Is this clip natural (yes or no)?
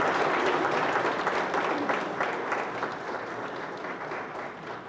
yes